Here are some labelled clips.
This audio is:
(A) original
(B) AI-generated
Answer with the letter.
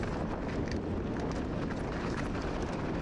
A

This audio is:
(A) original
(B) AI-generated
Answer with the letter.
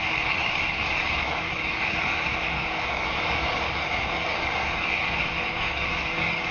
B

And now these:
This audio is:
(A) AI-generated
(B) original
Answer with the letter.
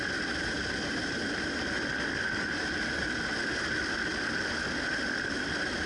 B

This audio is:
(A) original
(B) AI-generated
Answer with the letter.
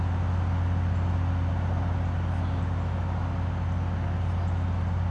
A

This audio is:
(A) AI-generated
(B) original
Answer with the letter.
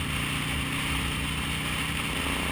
B